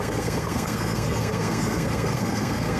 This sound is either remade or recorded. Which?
remade